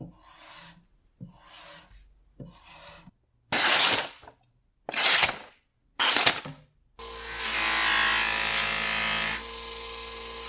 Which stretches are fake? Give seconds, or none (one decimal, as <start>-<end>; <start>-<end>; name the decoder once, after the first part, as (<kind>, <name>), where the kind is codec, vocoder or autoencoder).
none